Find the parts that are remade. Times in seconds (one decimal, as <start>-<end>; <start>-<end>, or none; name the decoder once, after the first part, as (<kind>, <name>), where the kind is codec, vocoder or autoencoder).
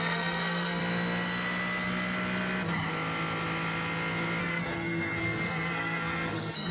0.0-0.8 (codec, SNAC); 4.4-6.7